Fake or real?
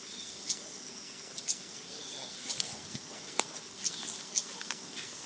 fake